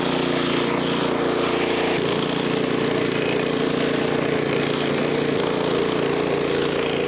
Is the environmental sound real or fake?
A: real